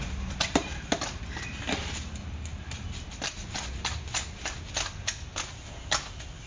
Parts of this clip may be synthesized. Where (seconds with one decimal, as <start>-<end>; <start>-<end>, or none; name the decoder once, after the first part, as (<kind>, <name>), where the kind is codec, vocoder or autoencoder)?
none

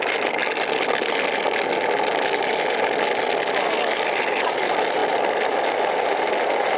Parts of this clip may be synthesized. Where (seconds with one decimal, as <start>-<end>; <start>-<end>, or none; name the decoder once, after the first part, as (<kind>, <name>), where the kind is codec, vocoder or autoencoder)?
0.0-0.4 (vocoder, BigVGAN v2); 4.4-6.8

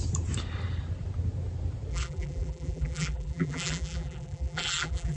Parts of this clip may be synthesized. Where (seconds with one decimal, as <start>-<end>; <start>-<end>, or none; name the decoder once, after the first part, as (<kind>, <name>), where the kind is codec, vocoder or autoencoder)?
1.9-5.2 (vocoder, BigVGAN v2)

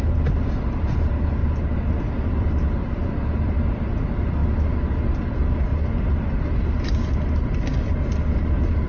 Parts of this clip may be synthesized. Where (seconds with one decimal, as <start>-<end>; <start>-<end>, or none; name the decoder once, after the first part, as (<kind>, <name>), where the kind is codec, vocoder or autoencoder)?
0.0-1.4 (vocoder, BigVGAN v2); 2.2-4.4; 5.0-5.7; 7.6-8.9

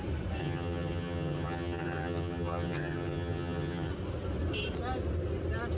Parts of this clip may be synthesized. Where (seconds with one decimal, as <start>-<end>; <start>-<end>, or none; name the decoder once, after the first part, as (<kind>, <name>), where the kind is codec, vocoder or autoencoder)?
0.4-3.9 (vocoder, HiFi-GAN)

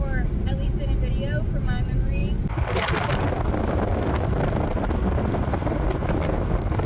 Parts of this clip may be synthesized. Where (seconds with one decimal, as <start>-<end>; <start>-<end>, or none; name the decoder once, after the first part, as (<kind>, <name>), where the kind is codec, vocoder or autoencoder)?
none

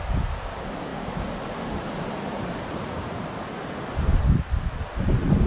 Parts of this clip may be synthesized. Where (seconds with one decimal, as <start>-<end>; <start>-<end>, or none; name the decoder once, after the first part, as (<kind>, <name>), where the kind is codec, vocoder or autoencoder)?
0.9-3.3 (vocoder, BigVGAN v2); 3.9-4.7